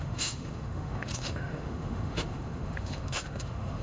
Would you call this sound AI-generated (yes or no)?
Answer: yes